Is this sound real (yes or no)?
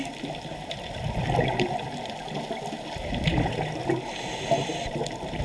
yes